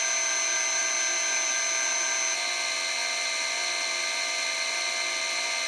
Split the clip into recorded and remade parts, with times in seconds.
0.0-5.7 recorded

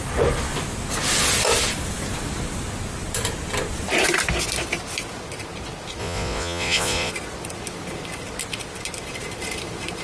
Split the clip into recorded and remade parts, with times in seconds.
0.0-6.0 recorded; 6.0-7.1 remade; 7.1-10.0 recorded

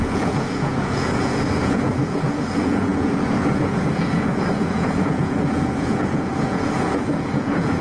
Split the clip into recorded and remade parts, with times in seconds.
0.0-7.8 remade

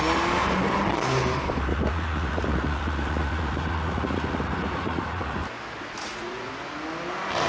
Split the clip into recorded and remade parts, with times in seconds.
0.0-1.7 recorded; 1.7-5.4 remade; 5.4-6.0 recorded; 6.0-6.5 remade; 6.5-7.5 recorded

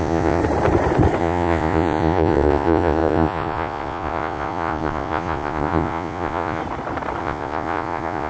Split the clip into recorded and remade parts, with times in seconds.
0.0-0.4 remade; 0.4-1.2 recorded; 1.2-6.6 remade; 6.6-7.2 recorded; 7.2-8.3 remade

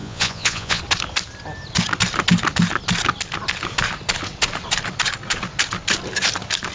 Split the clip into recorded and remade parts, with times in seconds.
0.0-0.8 remade; 0.8-6.7 recorded

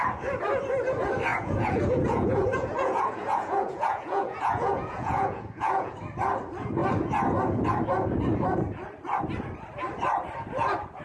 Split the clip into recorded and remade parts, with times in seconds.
0.0-1.3 recorded; 1.3-5.9 remade; 5.9-11.0 recorded